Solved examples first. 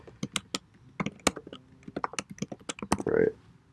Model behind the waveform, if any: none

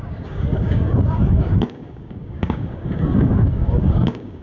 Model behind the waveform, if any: codec, DAC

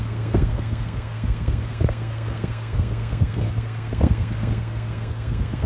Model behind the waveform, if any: codec, SNAC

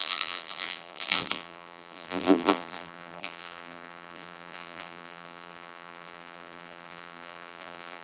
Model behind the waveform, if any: vocoder, BigVGAN v2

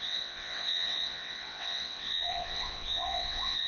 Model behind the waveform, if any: vocoder, WaveNeXt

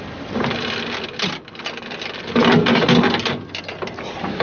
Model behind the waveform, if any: none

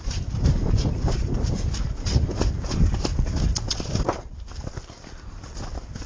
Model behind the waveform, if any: none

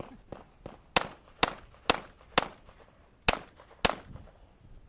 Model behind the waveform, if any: none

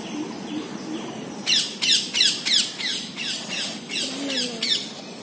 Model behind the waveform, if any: none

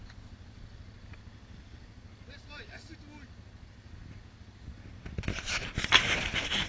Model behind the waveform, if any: none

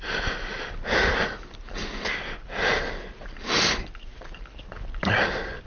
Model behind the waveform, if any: none